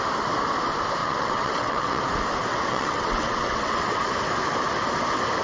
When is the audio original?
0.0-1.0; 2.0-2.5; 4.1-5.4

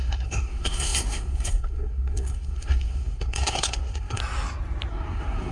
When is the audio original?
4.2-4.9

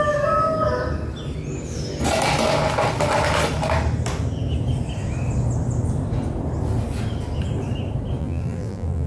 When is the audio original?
0.0-8.2

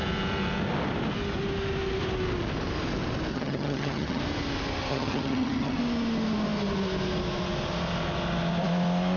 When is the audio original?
0.0-3.3; 4.2-4.9; 5.8-9.2

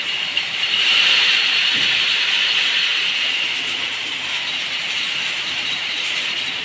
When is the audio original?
none

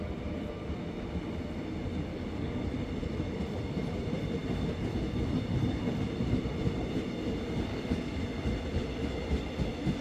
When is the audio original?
0.0-2.1; 2.6-7.7; 8.2-10.0

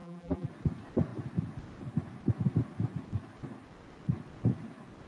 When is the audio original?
0.5-5.1

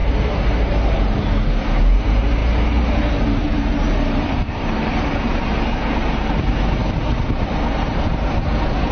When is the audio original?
1.0-2.4; 5.4-8.9